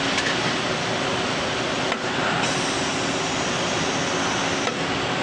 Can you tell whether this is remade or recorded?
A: recorded